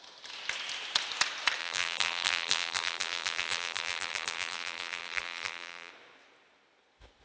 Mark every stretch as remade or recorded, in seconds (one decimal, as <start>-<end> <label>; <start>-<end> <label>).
0.0-1.6 recorded; 1.6-5.9 remade; 5.9-7.2 recorded